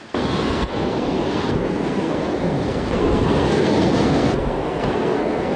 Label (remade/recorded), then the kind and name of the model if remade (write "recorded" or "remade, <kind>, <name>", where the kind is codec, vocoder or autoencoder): remade, codec, SNAC